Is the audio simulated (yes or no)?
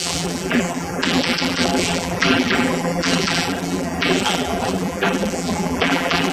yes